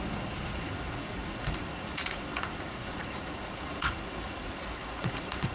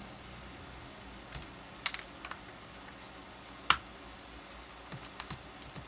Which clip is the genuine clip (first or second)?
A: second